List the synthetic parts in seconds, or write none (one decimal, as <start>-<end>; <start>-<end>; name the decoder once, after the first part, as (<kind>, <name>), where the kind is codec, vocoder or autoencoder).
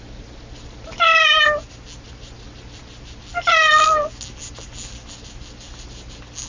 none